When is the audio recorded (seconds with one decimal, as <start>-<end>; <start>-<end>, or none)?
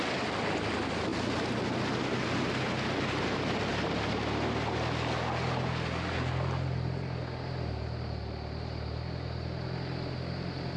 0.0-10.8